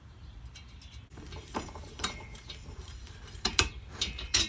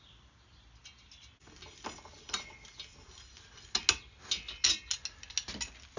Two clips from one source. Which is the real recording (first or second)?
second